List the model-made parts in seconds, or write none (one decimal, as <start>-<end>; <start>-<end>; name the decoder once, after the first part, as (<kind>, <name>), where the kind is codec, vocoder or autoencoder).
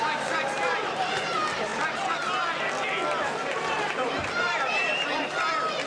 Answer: 0.0-1.7 (vocoder, BigVGAN v2); 3.5-5.1